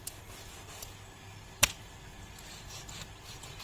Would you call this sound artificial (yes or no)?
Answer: no